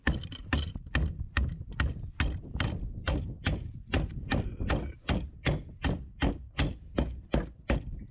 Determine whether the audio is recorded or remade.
recorded